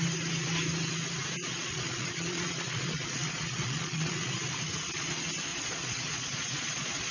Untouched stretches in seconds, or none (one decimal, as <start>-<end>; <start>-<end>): 0.0-1.4; 4.3-5.5